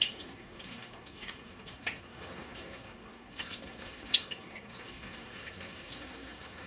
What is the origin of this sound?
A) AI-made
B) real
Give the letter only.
A